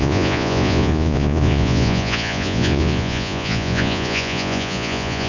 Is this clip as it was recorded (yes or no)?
no